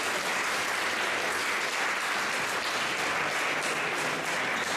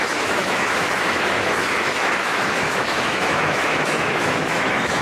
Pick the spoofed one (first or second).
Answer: second